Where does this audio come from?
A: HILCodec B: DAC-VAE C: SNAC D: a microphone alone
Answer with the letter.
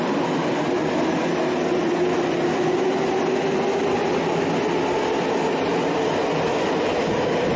D